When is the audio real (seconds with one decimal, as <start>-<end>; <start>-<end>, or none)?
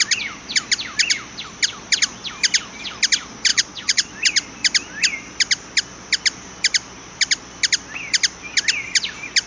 0.0-3.5; 4.1-9.5